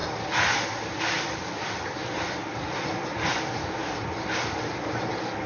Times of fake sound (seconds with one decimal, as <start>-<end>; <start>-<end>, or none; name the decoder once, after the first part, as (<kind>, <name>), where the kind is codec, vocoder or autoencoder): 0.0-3.3 (vocoder, BigVGAN v2); 3.8-4.8